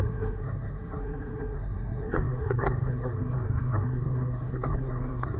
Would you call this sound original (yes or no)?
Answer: no